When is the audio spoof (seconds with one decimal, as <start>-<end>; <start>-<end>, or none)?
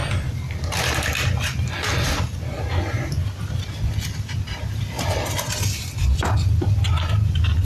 none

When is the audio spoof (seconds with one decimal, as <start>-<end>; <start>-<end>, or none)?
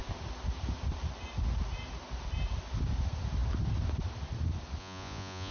4.8-5.5